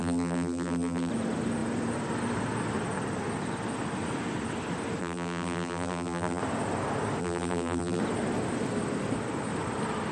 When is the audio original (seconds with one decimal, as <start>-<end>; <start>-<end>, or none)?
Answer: 1.1-5.0; 6.4-7.2; 8.0-10.1